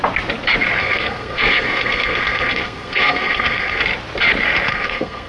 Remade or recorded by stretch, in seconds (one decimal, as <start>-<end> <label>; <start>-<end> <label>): 0.0-0.8 recorded; 0.8-3.8 remade; 3.8-4.7 recorded; 4.7-5.3 remade